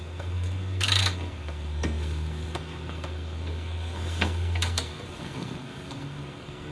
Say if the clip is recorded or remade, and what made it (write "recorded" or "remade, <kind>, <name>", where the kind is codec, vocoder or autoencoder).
remade, codec, SNAC